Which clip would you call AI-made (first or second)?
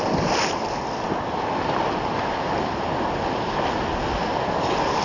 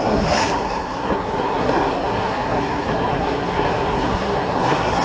second